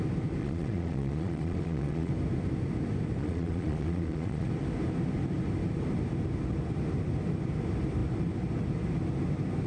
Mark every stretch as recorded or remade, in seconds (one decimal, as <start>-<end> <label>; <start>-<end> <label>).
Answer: 0.0-0.4 recorded; 0.4-2.1 remade; 2.1-3.2 recorded; 3.2-4.5 remade; 4.5-9.7 recorded